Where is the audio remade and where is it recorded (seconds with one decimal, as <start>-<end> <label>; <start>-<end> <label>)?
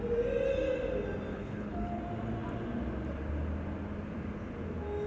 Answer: 0.0-1.3 recorded; 1.3-2.0 remade; 2.0-5.1 recorded